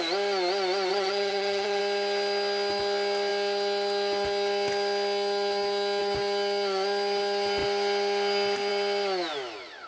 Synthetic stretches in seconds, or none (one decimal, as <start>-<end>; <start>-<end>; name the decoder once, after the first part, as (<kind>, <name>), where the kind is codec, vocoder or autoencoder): 0.9-1.8 (vocoder, HiFi-GAN)